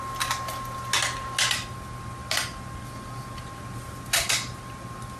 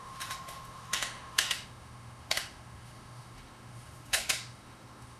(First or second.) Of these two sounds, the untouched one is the first